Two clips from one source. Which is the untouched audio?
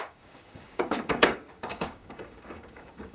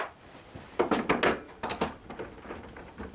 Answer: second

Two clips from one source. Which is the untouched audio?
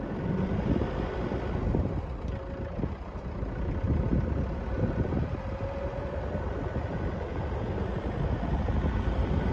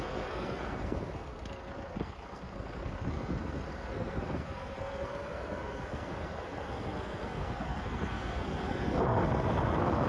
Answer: first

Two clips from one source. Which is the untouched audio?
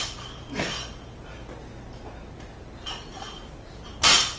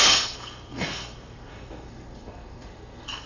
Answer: first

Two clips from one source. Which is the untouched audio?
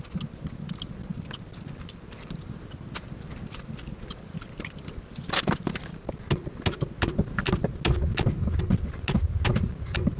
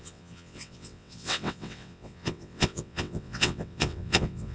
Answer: first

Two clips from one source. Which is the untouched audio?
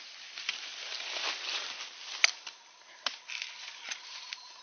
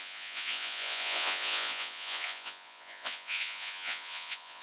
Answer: first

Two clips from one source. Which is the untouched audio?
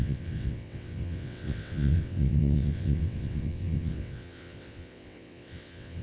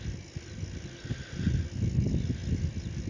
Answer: second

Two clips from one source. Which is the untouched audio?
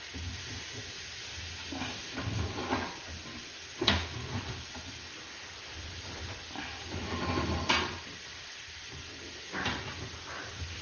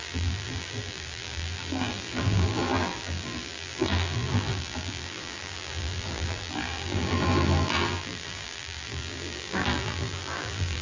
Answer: first